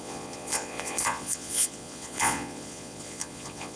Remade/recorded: remade